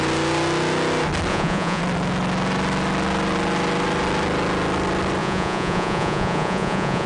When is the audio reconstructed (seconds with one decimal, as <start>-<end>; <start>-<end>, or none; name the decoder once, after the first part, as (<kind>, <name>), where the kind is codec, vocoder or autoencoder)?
1.3-1.8 (vocoder, Vocos); 5.2-7.1